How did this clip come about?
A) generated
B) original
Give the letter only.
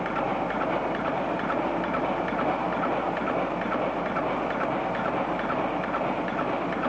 B